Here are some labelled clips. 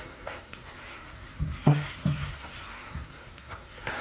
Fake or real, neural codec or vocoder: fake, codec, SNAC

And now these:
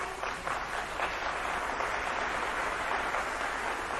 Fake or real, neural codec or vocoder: real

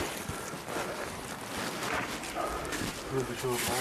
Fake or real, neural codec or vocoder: real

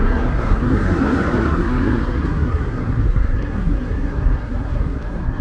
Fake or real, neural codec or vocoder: fake, codec, SNAC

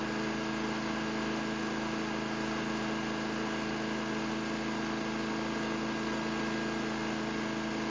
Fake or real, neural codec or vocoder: real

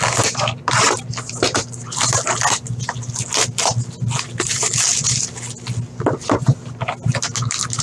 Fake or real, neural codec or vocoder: real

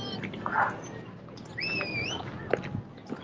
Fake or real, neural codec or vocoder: real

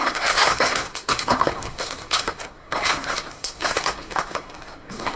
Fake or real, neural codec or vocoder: fake, codec, SNAC